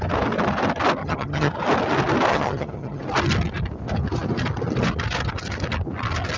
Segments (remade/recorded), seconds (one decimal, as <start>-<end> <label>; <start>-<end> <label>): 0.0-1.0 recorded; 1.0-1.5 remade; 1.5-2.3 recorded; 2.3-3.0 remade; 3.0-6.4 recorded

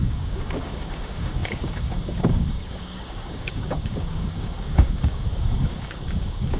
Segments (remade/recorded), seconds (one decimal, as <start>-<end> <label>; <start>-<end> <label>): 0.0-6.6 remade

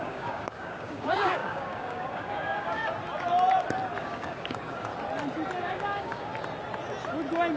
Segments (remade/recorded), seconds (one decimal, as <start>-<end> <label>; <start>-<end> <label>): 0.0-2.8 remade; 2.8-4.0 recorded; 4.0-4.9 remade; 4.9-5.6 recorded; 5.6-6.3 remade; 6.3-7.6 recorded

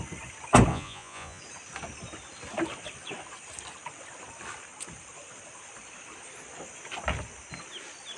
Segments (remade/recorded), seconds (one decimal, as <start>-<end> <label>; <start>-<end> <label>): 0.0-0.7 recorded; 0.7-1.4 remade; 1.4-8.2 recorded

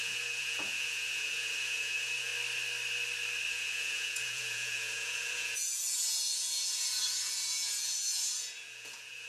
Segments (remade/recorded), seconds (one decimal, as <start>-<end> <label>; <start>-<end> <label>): 0.0-2.3 remade; 2.3-3.5 recorded; 3.5-9.3 remade

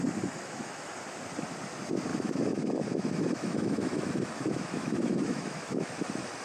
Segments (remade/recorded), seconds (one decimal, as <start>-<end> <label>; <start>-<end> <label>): 0.0-0.4 recorded; 0.4-0.9 remade; 0.9-2.1 recorded; 2.1-5.9 remade; 5.9-6.4 recorded